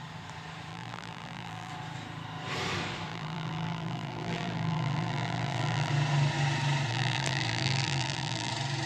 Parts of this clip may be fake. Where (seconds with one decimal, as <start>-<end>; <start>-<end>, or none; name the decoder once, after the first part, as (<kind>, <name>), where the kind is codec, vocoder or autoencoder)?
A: 0.7-1.7 (vocoder, BigVGAN v2); 3.1-5.9; 6.9-8.5